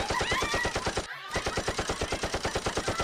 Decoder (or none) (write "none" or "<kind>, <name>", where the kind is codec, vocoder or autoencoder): none